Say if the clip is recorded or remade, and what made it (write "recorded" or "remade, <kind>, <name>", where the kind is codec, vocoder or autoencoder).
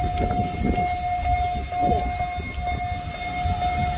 recorded